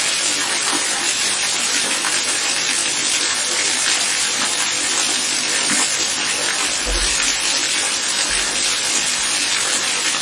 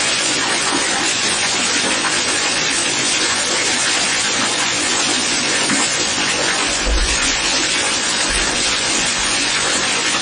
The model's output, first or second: second